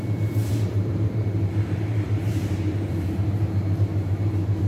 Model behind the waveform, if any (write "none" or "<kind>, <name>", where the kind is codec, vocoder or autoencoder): vocoder, BigVGAN v2